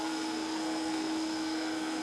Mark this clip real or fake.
fake